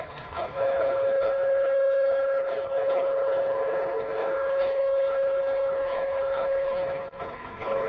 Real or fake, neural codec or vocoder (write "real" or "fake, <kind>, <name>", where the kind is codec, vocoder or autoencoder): fake, codec, HILCodec